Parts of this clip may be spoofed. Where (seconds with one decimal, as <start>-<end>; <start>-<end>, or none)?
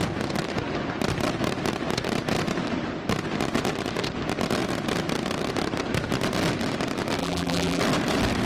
7.2-7.8